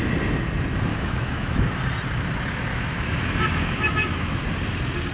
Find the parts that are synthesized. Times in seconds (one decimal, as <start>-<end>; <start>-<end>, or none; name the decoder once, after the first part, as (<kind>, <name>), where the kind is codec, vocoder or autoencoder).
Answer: 0.9-1.7 (autoencoder, DAC-VAE); 2.7-4.4